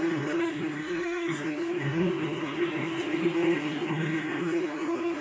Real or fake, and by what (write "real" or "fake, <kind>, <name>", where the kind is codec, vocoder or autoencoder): fake, codec, SNAC